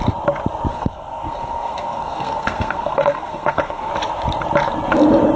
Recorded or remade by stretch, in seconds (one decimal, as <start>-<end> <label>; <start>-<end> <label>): 0.0-0.7 recorded; 0.7-3.9 remade; 3.9-5.4 recorded